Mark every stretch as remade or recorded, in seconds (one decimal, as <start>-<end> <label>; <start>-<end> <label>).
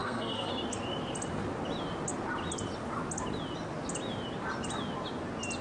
0.0-0.5 remade; 0.5-5.6 recorded